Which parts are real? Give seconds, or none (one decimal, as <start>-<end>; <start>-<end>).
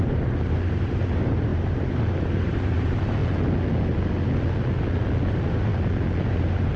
3.2-5.3; 5.7-6.3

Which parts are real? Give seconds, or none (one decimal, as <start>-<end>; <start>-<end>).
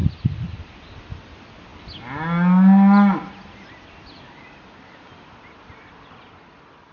0.0-6.9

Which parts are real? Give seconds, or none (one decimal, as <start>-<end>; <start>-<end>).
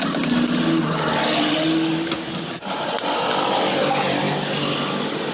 0.0-1.9; 4.2-5.3